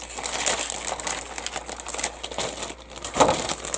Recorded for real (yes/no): yes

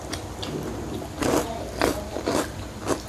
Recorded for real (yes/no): no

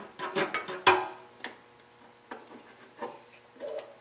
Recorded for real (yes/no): yes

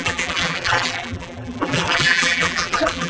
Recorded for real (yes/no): no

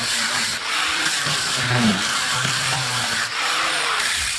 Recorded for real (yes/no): no